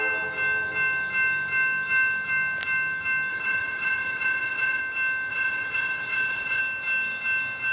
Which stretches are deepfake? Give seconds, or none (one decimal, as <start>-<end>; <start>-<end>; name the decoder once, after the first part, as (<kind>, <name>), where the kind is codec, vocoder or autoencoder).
3.3-4.8 (vocoder, WaveNeXt); 5.3-6.6